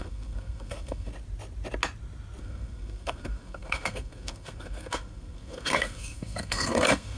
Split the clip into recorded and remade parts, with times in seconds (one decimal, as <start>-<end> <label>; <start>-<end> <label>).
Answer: 0.0-1.1 remade; 1.1-2.4 recorded; 2.4-7.2 remade